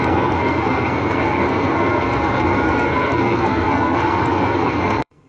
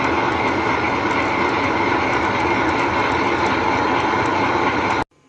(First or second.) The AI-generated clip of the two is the first